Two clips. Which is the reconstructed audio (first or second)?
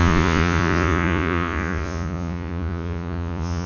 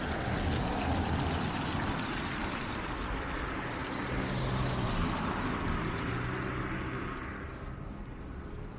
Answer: first